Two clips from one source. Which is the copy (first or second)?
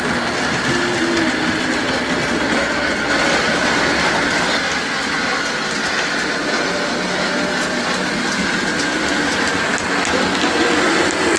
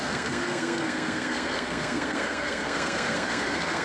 second